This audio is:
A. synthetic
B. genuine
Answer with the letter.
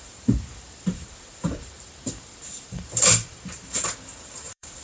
A